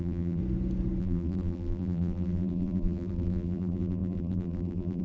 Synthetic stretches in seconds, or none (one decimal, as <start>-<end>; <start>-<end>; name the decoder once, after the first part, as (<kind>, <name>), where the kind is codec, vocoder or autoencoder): 0.0-0.4 (vocoder, BigVGAN v2); 1.0-5.0